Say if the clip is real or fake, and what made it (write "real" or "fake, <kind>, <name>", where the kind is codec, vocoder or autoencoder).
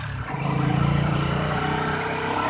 fake, vocoder, BigVGAN v2